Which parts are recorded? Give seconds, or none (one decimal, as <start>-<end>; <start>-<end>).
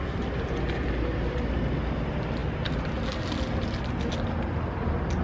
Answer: 0.0-5.2